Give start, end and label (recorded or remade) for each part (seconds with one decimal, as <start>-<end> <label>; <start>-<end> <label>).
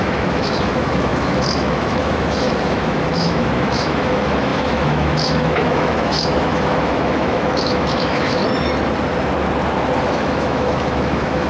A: 0.0-8.4 remade; 8.4-10.0 recorded; 10.0-11.5 remade